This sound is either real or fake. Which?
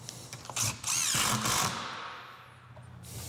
real